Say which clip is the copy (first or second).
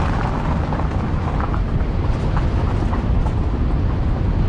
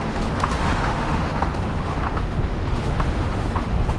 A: second